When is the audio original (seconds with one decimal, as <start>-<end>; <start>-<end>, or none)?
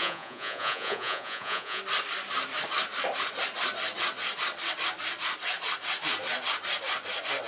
1.8-7.5